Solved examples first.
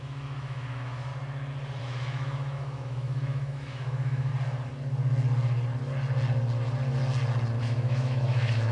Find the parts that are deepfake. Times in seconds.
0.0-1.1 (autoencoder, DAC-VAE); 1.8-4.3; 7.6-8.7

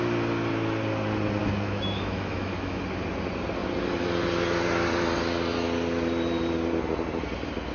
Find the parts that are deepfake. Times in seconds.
1.4-2.8 (autoencoder, DAC-VAE)

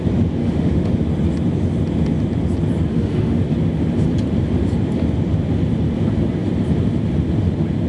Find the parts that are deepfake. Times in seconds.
0.4-0.9 (autoencoder, DAC-VAE); 2.9-3.4

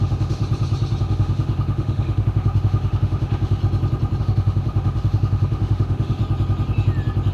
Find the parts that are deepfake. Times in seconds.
0.0-0.4 (autoencoder, DAC-VAE); 1.0-3.6; 4.2-6.2